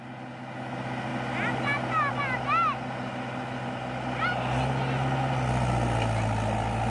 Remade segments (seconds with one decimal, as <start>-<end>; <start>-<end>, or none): none